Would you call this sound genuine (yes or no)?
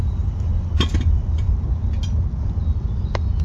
yes